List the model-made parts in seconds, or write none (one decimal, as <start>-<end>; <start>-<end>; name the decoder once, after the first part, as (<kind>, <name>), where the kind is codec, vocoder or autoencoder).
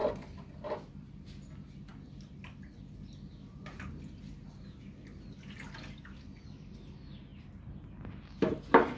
none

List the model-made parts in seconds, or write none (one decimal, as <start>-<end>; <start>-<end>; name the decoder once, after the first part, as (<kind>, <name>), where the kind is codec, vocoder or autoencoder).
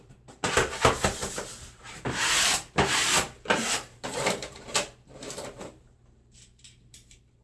0.0-7.4 (vocoder, BigVGAN v2)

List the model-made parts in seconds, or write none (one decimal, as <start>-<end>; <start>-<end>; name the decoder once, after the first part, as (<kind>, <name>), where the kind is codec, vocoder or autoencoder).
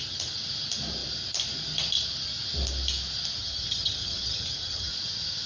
3.4-4.9 (vocoder, HiFi-GAN)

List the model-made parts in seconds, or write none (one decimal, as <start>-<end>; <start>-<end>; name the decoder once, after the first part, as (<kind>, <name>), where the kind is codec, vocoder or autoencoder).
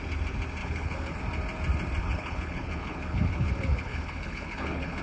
0.6-1.2 (codec, HILCodec); 2.0-5.0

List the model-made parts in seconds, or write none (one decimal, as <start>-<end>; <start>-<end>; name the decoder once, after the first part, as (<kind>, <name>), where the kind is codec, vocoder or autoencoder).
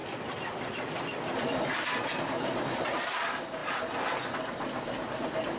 0.0-2.6 (vocoder, BigVGAN v2); 3.6-4.1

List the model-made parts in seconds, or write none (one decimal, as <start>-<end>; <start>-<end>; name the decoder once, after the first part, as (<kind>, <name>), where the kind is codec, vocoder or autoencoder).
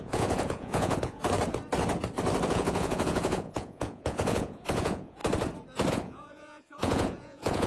0.0-1.2 (vocoder, Vocos); 2.5-5.2; 5.9-7.7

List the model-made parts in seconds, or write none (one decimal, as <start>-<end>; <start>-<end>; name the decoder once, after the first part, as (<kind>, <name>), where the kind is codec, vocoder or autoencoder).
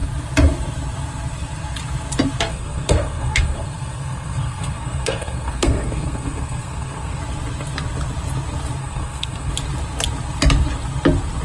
2.5-7.2 (codec, SNAC); 8.8-9.5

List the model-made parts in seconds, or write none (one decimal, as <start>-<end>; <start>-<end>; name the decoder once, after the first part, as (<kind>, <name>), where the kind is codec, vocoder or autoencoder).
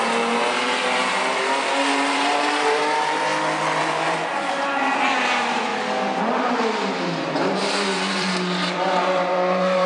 0.0-3.3 (vocoder, BigVGAN v2); 3.8-5.7; 6.9-9.9